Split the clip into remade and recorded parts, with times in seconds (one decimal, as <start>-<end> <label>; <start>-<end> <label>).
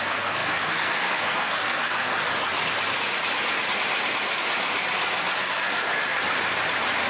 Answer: 0.0-2.1 remade; 2.1-5.4 recorded; 5.4-6.0 remade; 6.0-7.1 recorded